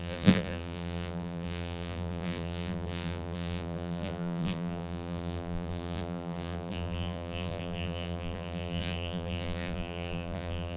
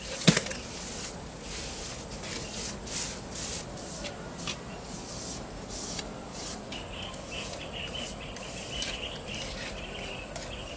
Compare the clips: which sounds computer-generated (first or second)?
first